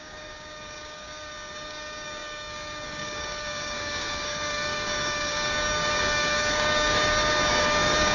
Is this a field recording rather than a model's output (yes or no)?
no